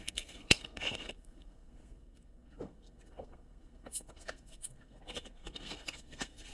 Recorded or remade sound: remade